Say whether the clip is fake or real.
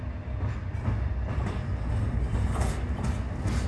real